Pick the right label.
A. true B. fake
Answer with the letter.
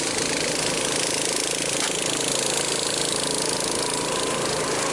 A